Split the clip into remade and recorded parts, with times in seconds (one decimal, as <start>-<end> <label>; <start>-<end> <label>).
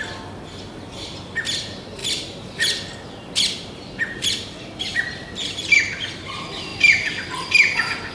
0.0-8.1 recorded